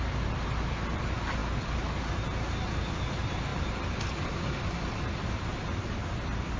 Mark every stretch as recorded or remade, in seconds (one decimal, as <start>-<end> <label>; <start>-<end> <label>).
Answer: 0.0-6.6 recorded